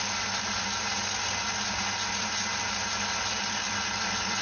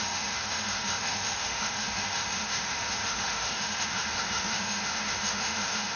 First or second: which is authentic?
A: first